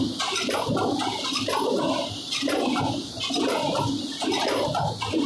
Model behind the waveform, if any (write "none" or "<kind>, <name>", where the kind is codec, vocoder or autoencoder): none